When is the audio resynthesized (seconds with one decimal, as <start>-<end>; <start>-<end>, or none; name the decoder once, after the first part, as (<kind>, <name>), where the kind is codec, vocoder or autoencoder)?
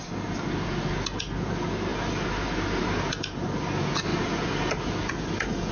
none